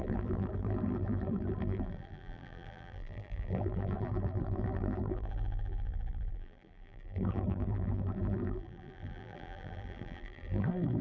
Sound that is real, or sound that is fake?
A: fake